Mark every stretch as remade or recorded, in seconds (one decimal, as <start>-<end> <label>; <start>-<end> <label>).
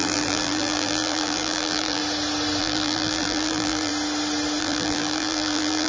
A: 0.0-2.0 remade; 2.0-2.6 recorded; 2.6-3.9 remade; 3.9-4.6 recorded; 4.6-5.9 remade